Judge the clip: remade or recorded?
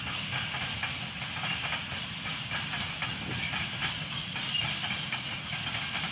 recorded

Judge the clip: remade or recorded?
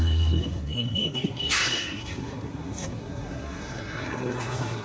remade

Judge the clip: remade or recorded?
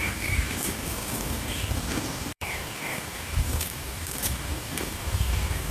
remade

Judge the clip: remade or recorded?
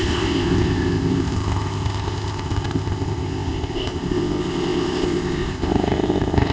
remade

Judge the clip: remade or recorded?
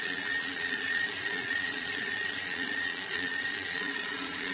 remade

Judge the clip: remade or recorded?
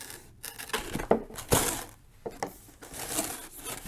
recorded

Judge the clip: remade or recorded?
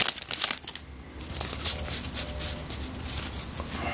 recorded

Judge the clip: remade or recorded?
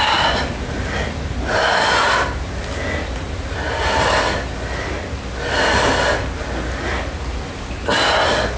recorded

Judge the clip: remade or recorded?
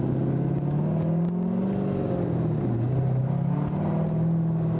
recorded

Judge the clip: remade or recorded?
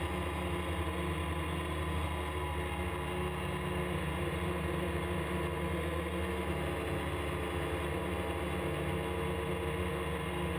recorded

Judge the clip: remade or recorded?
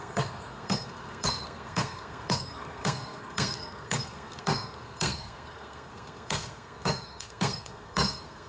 remade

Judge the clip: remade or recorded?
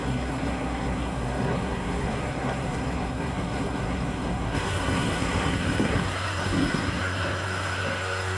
remade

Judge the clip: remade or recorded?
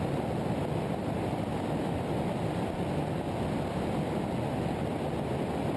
recorded